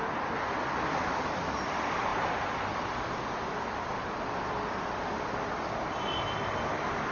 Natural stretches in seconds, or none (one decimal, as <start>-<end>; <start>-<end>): 0.0-7.1